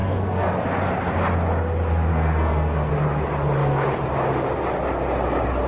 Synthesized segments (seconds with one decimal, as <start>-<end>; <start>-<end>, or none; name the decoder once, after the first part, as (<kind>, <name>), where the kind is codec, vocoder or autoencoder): 0.0-0.5 (codec, SNAC); 2.1-2.9